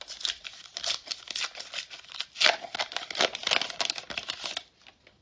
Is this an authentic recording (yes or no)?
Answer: yes